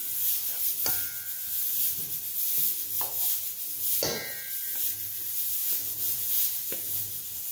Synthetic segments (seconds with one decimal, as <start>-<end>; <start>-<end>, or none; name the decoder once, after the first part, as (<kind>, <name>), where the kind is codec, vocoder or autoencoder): 5.6-7.0 (vocoder, Vocos)